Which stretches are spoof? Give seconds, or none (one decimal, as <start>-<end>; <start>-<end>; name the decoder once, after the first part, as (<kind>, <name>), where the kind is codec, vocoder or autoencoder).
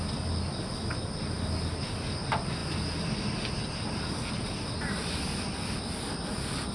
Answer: none